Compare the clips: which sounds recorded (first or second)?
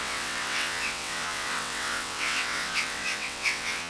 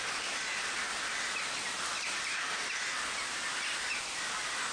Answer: second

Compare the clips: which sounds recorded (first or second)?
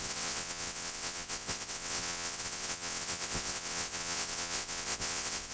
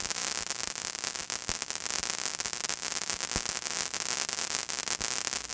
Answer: second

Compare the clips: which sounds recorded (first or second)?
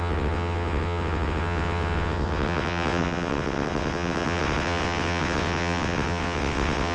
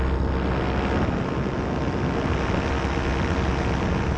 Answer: second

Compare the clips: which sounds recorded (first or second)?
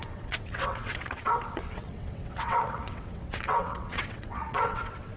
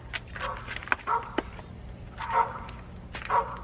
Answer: second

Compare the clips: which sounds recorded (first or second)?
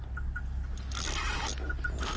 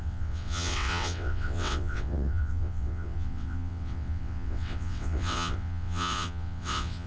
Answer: first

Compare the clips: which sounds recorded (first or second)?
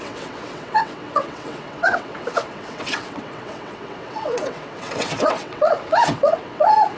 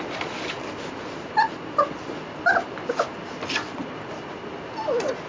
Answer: second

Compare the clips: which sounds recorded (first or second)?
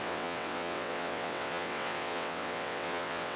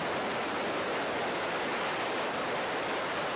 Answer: second